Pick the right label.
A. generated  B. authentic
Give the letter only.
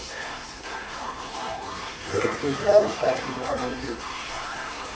A